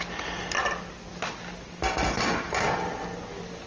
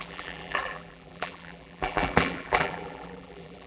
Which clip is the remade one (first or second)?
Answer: second